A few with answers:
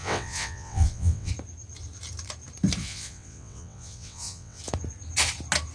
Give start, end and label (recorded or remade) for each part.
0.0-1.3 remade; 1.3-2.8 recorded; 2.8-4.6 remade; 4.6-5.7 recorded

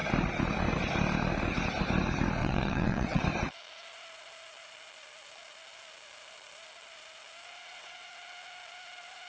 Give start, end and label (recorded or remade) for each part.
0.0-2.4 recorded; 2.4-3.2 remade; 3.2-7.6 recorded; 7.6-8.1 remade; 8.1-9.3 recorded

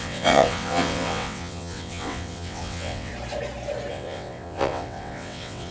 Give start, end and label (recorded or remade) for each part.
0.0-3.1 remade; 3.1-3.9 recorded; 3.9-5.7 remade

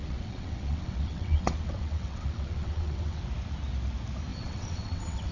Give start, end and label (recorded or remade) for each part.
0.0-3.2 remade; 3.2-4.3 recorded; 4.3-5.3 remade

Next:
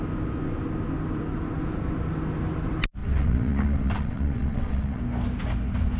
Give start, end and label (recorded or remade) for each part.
0.0-3.0 recorded; 3.0-5.0 remade; 5.0-6.0 recorded